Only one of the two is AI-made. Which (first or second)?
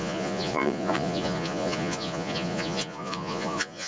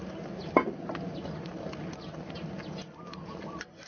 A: first